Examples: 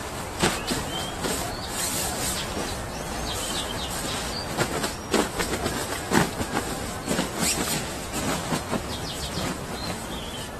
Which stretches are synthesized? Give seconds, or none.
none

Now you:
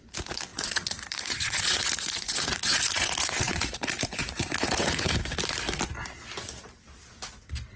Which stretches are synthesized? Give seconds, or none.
0.5-5.1 (vocoder, Vocos)

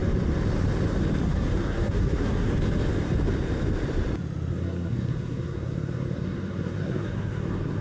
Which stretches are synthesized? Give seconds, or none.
1.2-2.5 (codec, SNAC); 4.5-7.8